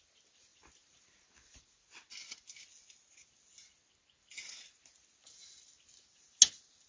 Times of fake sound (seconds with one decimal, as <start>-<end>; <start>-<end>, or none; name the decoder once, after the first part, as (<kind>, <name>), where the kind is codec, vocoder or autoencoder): none